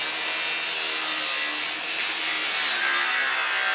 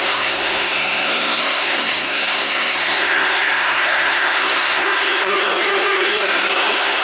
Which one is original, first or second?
first